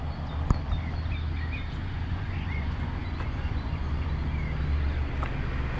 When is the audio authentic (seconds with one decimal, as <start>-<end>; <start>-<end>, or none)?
0.0-1.8; 4.1-5.8